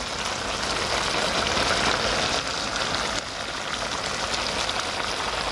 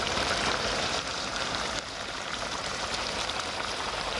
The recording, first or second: first